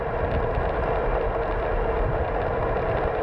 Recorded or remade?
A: recorded